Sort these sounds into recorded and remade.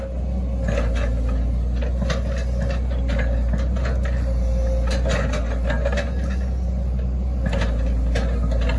recorded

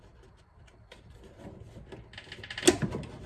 recorded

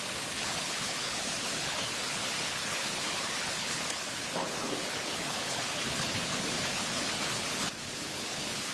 remade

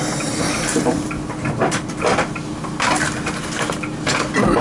recorded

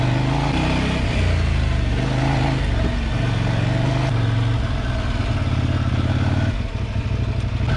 recorded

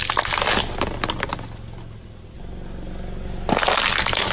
recorded